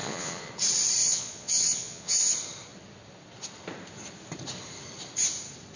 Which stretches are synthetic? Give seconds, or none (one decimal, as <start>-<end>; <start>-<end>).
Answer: 0.0-0.5; 1.0-2.3